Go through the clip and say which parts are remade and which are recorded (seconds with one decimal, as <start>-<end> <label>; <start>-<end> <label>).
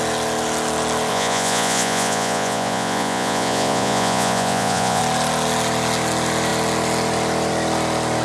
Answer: 0.0-1.1 recorded; 1.1-5.0 remade; 5.0-8.2 recorded